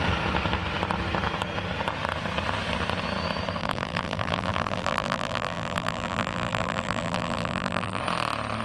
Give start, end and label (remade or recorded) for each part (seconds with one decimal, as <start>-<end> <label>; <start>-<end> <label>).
0.0-3.6 recorded; 3.6-8.0 remade; 8.0-8.6 recorded

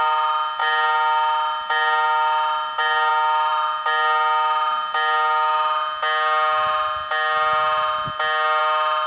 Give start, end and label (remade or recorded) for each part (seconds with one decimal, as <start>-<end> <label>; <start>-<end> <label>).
0.0-9.1 recorded

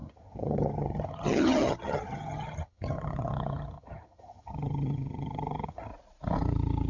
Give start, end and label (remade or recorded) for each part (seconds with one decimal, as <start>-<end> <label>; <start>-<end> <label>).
0.0-5.9 remade; 5.9-6.9 recorded

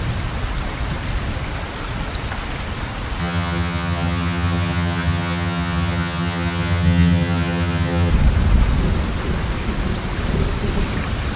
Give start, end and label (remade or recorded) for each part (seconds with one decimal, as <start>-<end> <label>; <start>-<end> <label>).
0.0-3.2 recorded; 3.2-8.1 remade; 8.1-11.4 recorded

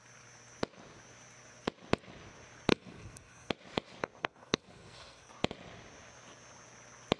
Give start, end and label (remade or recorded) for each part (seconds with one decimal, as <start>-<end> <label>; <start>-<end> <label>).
0.0-2.7 recorded; 2.7-3.5 remade; 3.5-4.2 recorded; 4.2-5.3 remade; 5.3-7.2 recorded

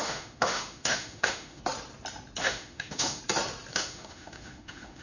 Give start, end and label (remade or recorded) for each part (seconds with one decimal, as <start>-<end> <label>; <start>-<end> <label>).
0.0-1.6 remade; 1.6-2.4 recorded; 2.4-3.2 remade; 3.2-3.7 recorded; 3.7-5.0 remade